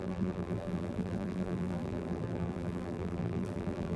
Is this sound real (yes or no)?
no